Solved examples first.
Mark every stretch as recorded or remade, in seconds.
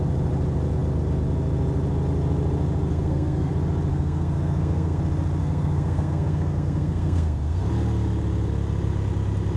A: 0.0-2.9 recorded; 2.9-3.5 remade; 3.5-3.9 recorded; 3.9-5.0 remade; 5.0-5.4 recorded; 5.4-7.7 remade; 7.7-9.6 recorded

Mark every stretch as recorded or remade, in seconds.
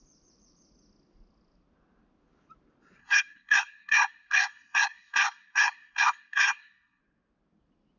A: 0.0-3.0 recorded; 3.0-7.0 remade; 7.0-8.0 recorded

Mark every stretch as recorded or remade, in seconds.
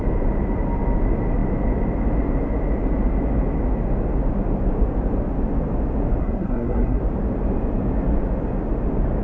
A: 0.0-6.2 recorded; 6.2-7.0 remade; 7.0-9.2 recorded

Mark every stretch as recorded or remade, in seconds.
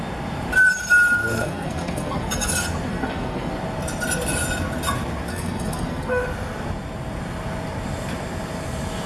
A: 0.0-1.2 recorded; 1.2-2.5 remade; 2.5-2.9 recorded; 2.9-3.5 remade; 3.5-5.3 recorded; 5.3-6.2 remade; 6.2-9.1 recorded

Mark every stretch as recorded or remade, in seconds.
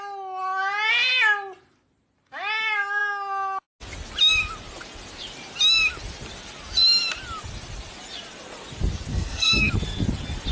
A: 0.0-9.1 recorded; 9.1-9.7 remade; 9.7-10.5 recorded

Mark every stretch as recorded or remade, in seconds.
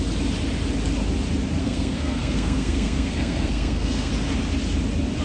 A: 0.0-1.6 recorded; 1.6-4.1 remade; 4.1-5.2 recorded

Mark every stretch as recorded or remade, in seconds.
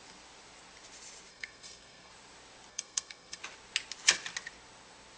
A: 0.0-1.3 recorded; 1.3-2.1 remade; 2.1-2.7 recorded; 2.7-3.4 remade; 3.4-5.2 recorded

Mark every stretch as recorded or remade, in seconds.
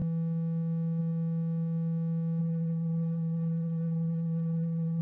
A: 0.0-2.4 recorded; 2.4-5.0 remade